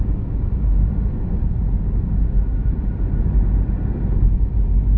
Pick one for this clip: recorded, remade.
recorded